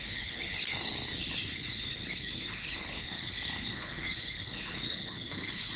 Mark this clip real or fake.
fake